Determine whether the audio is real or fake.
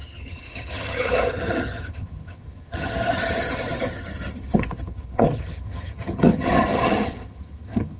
fake